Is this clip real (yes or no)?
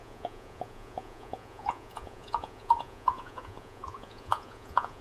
no